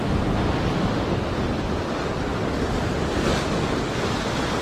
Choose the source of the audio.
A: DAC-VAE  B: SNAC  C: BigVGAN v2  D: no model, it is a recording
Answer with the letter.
D